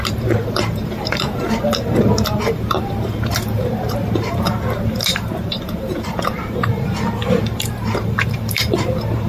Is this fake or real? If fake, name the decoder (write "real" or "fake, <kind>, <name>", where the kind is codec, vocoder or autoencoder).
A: fake, vocoder, BigVGAN v2